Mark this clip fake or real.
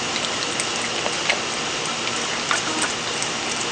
real